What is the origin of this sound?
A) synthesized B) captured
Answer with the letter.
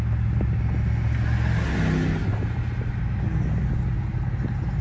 B